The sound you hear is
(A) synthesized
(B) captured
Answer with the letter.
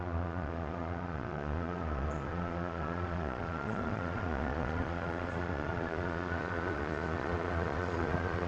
A